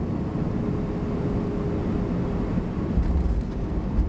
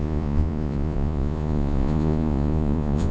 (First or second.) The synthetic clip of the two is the second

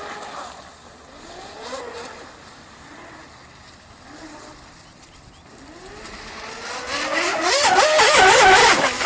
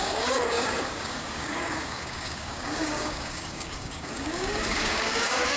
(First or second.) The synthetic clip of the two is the second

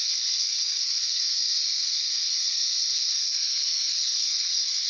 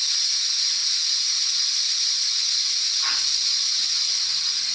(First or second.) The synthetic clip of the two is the first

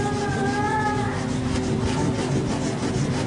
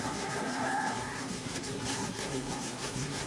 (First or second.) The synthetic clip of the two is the second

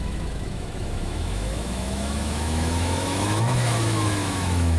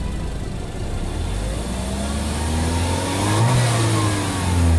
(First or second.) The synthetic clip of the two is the first